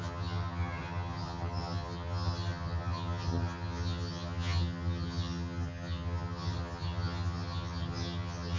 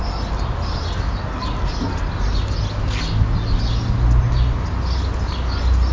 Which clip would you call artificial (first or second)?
first